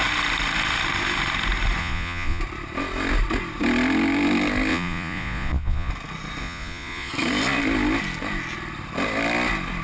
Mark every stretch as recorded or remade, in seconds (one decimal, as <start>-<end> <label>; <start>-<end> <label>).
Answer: 0.0-1.8 recorded; 1.8-2.4 remade; 2.4-4.7 recorded; 4.7-5.9 remade; 5.9-6.4 recorded; 6.4-7.1 remade; 7.1-9.8 recorded